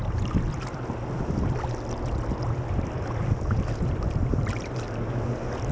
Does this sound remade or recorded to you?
recorded